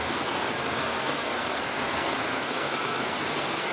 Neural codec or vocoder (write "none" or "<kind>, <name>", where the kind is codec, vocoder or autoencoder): codec, SNAC